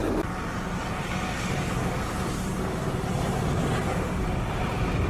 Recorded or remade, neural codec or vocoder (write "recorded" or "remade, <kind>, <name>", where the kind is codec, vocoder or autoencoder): recorded